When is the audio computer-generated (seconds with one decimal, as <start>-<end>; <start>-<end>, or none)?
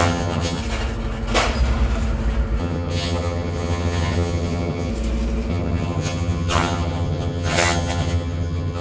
0.0-0.6; 2.6-4.9; 5.5-8.8